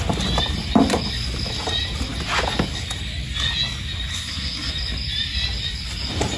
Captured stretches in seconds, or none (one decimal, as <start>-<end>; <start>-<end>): 0.0-4.1; 4.7-6.4